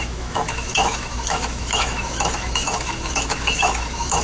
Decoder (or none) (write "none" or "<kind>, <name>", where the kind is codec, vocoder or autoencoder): autoencoder, DAC-VAE